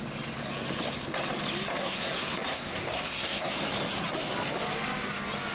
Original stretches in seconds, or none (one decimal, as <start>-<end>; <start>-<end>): 0.0-1.8; 3.5-5.5